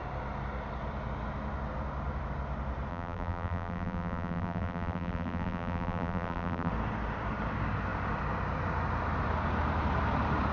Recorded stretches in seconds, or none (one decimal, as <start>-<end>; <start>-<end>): 0.0-2.9; 6.7-10.5